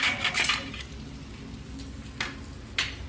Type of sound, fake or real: real